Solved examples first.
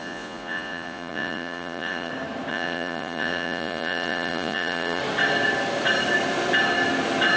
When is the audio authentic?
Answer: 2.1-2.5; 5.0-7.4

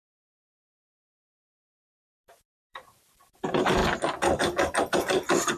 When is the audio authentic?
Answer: 3.8-5.6

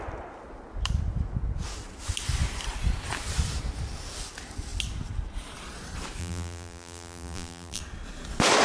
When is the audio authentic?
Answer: 0.0-6.2; 7.8-8.6

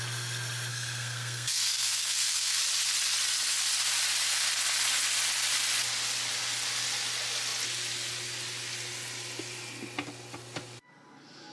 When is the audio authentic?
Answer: 0.0-0.7; 2.6-11.5

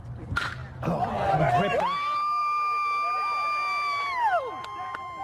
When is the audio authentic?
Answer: 0.0-5.2

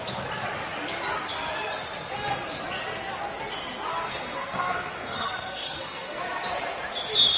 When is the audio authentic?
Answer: 0.0-3.9; 6.2-7.4

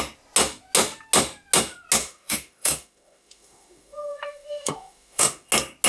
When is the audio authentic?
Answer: 0.0-2.0; 5.5-5.9

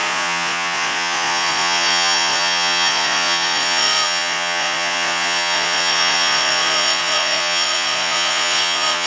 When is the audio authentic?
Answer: none